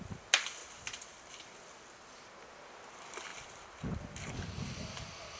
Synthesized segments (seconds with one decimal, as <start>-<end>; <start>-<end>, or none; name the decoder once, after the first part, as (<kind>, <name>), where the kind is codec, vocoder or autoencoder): none